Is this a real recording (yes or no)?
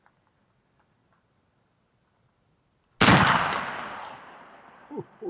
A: yes